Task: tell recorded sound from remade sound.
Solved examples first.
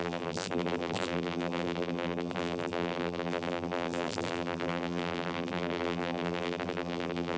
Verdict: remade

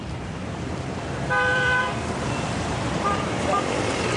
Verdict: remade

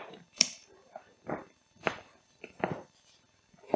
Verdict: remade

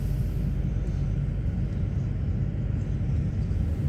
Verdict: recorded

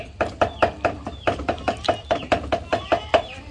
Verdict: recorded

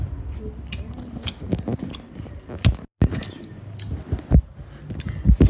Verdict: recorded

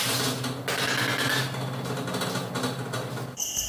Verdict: recorded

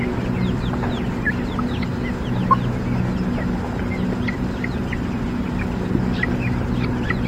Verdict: recorded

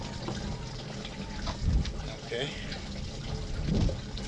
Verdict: recorded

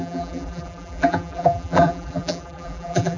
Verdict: remade